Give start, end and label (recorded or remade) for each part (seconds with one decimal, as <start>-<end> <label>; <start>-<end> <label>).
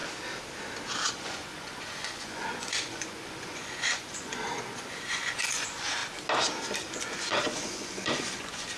0.0-1.1 recorded; 1.1-6.0 remade; 6.0-6.9 recorded; 6.9-8.8 remade